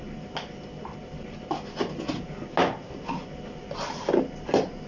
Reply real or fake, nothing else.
real